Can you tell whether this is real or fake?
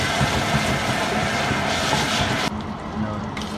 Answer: real